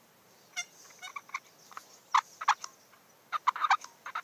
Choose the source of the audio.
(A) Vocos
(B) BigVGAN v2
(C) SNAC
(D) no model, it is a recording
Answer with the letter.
D